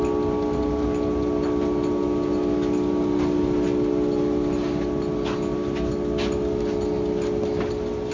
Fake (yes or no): no